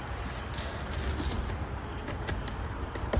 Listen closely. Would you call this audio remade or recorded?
recorded